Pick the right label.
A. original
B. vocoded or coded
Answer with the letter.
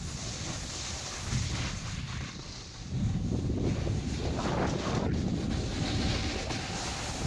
A